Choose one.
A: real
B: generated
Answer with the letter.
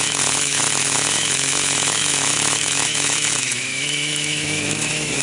B